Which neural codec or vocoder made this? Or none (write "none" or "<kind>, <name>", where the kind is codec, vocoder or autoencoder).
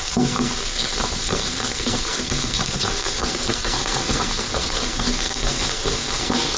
codec, SNAC